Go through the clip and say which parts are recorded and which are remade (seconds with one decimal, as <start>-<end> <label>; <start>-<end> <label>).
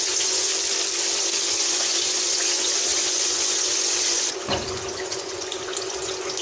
0.0-0.5 remade; 0.5-1.5 recorded; 1.5-6.4 remade